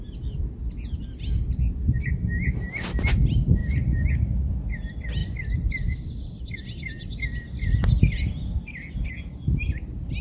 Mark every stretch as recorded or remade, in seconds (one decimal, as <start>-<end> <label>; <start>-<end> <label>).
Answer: 0.0-3.6 recorded; 3.6-4.5 remade; 4.5-5.2 recorded; 5.2-9.1 remade; 9.1-10.2 recorded

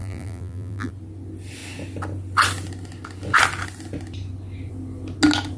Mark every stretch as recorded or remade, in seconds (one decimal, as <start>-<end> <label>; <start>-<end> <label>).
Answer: 0.0-0.9 remade; 0.9-5.6 recorded

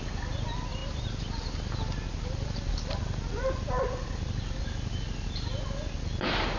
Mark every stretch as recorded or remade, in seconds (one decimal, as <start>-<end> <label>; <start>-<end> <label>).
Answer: 0.0-0.8 recorded; 0.8-4.5 remade; 4.5-6.6 recorded

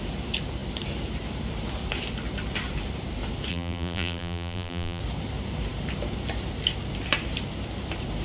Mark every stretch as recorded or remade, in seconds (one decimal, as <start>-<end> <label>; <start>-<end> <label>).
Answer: 0.0-3.5 recorded; 3.5-5.0 remade; 5.0-8.2 recorded

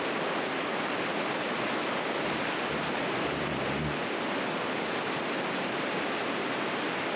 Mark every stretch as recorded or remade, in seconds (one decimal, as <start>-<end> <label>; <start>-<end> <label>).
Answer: 0.0-7.2 recorded

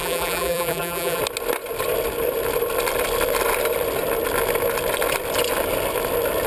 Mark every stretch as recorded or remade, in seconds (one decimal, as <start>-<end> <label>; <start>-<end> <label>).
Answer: 0.0-1.2 remade; 1.2-6.5 recorded

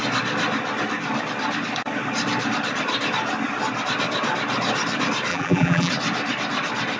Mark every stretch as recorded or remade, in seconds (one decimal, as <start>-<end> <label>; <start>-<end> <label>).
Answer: 0.0-5.3 recorded; 5.3-5.9 remade; 5.9-7.0 recorded